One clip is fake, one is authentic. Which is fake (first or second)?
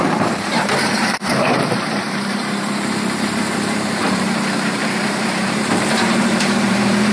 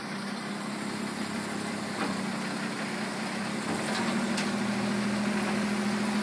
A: first